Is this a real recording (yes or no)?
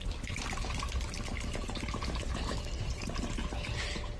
yes